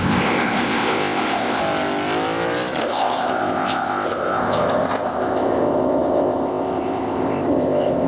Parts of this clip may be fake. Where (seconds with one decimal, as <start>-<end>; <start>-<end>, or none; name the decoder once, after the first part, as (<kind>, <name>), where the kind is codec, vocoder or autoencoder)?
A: 0.0-1.6 (codec, ZipCodec); 2.8-8.1